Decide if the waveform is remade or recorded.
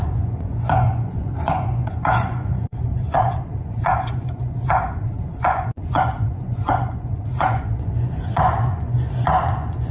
remade